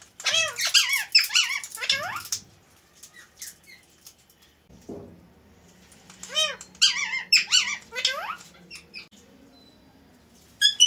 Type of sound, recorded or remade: recorded